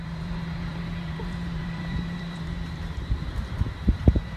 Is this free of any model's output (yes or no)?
no